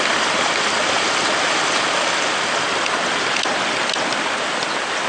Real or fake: real